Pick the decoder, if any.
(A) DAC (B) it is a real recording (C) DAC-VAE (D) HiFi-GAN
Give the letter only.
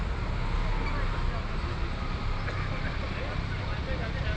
B